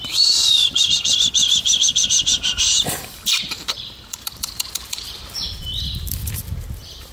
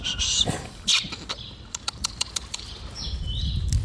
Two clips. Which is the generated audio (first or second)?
first